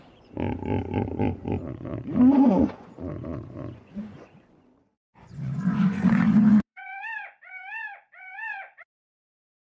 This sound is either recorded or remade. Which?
remade